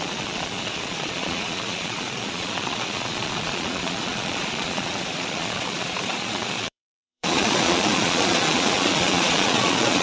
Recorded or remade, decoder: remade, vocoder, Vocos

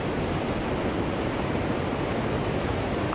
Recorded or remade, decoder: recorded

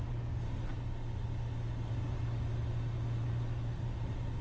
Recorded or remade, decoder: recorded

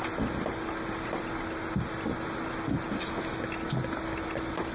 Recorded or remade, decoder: recorded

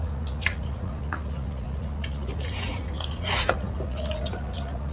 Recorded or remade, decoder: remade, vocoder, Vocos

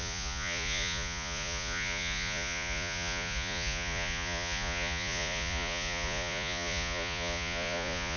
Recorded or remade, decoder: remade, vocoder, Vocos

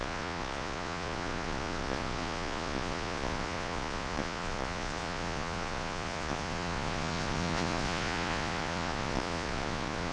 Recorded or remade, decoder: remade, vocoder, Vocos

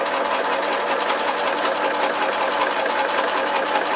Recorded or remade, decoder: recorded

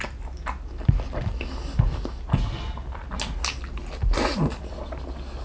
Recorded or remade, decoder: recorded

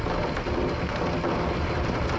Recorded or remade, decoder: recorded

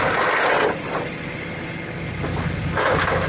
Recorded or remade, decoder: recorded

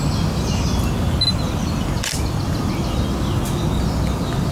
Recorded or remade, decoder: recorded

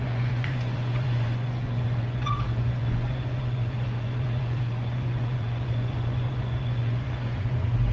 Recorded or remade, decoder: remade, vocoder, Vocos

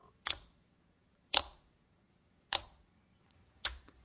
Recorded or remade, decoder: remade, vocoder, Vocos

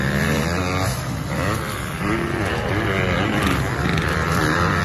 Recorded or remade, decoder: recorded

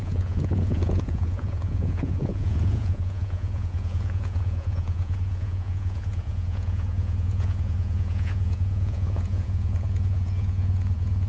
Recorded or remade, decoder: remade, vocoder, Vocos